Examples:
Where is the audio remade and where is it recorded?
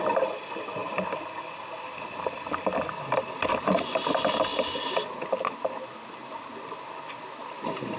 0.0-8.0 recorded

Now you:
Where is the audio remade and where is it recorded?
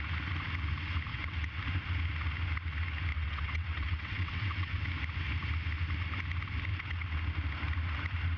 0.0-1.1 recorded; 1.1-1.6 remade; 1.6-3.1 recorded; 3.1-4.8 remade; 4.8-6.7 recorded; 6.7-7.2 remade; 7.2-8.4 recorded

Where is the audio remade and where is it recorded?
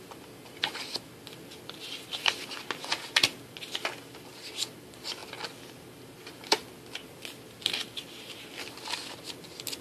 0.0-9.8 recorded